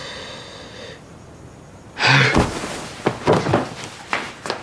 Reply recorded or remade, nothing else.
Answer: recorded